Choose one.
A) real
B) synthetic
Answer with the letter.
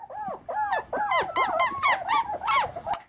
A